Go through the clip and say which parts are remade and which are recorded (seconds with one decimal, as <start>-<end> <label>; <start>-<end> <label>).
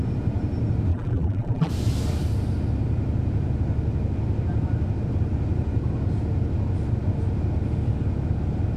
0.0-0.9 recorded; 0.9-1.7 remade; 1.7-8.8 recorded